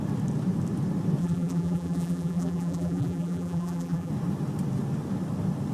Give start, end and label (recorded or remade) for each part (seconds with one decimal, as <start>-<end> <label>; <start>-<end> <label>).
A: 0.0-1.2 recorded; 1.2-4.1 remade; 4.1-5.7 recorded